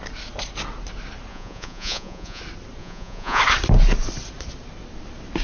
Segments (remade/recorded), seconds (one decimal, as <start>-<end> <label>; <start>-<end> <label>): 0.0-1.3 recorded; 1.3-2.4 remade; 2.4-2.8 recorded; 2.8-3.4 remade; 3.4-5.4 recorded